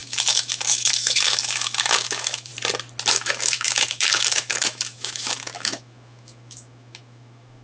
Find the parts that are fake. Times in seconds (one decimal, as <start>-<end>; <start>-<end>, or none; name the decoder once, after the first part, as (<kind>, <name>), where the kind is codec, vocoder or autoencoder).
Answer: 0.0-2.5 (autoencoder, DAC-VAE); 3.1-7.6